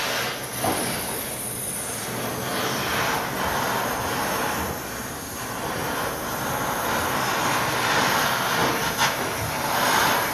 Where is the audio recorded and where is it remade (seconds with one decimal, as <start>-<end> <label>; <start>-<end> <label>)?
0.0-10.3 recorded